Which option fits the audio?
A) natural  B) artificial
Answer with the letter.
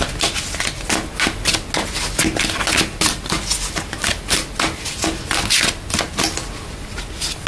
A